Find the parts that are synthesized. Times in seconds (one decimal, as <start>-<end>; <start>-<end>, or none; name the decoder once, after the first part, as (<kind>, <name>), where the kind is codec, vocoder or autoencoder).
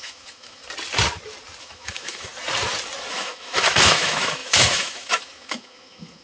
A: 0.0-0.6 (autoencoder, DAC-VAE); 1.6-2.3; 3.1-6.2